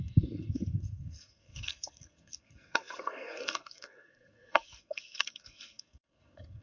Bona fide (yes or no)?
no